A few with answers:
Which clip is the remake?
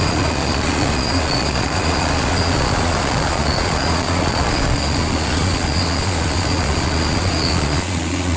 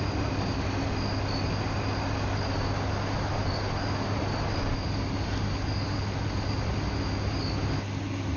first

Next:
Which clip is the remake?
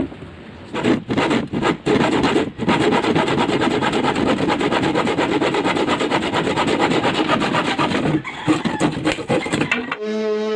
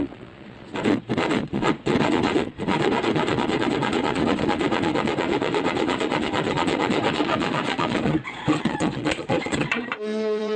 second